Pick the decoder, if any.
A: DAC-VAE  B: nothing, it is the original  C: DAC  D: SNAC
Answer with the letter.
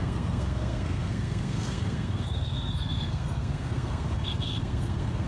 D